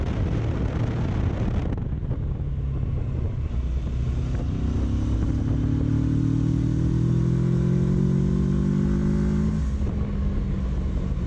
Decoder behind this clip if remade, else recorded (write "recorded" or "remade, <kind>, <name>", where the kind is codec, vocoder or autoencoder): recorded